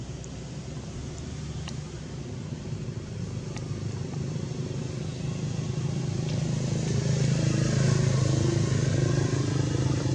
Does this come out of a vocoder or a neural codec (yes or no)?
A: no